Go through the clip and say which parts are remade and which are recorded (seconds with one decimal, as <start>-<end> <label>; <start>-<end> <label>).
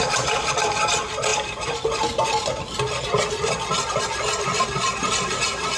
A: 0.0-5.8 recorded